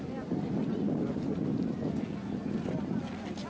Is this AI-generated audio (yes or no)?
no